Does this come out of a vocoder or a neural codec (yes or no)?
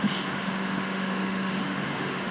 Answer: yes